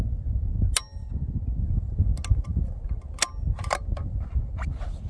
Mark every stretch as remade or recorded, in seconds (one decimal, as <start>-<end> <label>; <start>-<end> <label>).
0.0-5.1 recorded